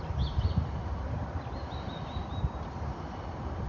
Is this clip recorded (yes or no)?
yes